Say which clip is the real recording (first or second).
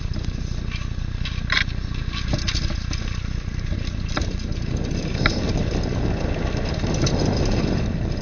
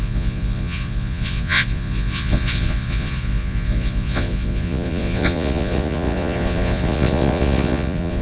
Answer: first